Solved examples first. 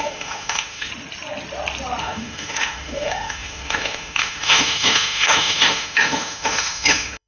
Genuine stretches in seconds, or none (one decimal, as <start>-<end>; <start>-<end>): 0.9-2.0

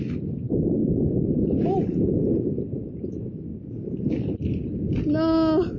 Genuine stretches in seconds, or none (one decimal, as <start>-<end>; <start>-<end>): 0.0-0.8; 2.4-5.8

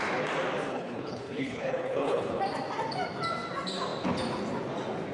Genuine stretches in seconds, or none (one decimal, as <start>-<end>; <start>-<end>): 0.0-0.7; 2.4-5.1